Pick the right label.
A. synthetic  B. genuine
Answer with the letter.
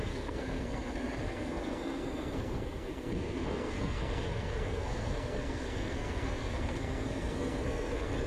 A